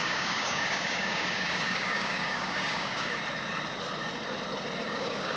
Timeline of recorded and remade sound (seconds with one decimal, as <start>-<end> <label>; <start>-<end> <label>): 0.0-3.2 remade; 3.2-4.8 recorded; 4.8-5.4 remade